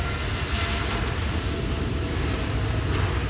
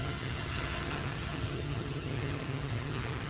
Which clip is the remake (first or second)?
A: second